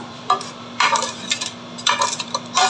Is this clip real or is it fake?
fake